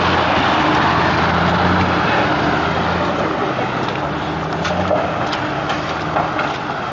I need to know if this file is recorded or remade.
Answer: recorded